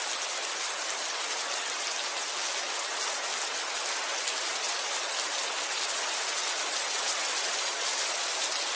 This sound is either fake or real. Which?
real